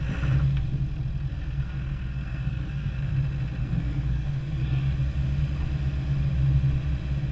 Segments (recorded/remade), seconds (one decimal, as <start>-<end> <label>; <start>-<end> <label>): 0.0-1.3 recorded; 1.3-3.1 remade; 3.1-3.6 recorded; 3.6-4.8 remade; 4.8-7.3 recorded